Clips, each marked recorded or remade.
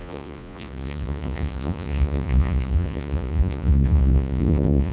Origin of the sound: remade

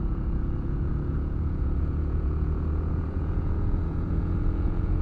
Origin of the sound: remade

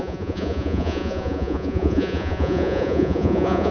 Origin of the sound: remade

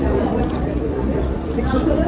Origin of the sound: remade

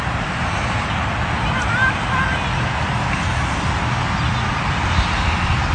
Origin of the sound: recorded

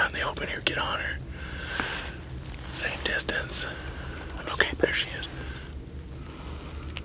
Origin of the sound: recorded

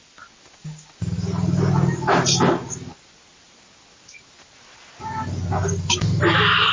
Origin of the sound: recorded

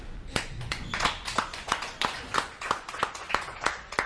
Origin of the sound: remade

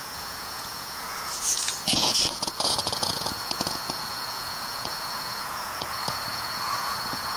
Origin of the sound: remade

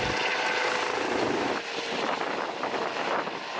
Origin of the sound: recorded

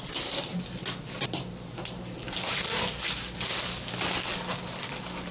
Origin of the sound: recorded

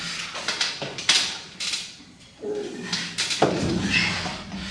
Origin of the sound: recorded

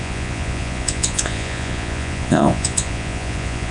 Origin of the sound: remade